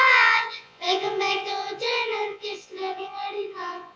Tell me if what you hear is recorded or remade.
remade